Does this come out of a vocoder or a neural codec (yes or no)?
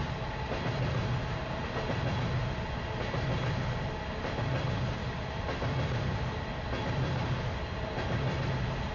no